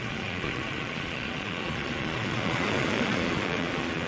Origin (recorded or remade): remade